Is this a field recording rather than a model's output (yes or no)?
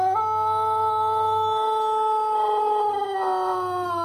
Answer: yes